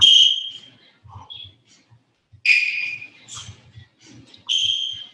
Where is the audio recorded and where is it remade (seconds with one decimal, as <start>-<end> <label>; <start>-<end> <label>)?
0.0-2.2 remade; 2.2-2.8 recorded; 2.8-3.4 remade; 3.4-5.1 recorded